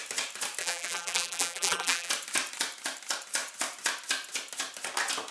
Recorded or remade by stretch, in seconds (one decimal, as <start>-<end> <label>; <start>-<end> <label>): 0.0-0.6 recorded; 0.6-2.1 remade; 2.1-5.3 recorded